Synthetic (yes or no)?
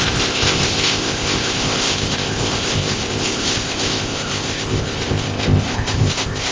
yes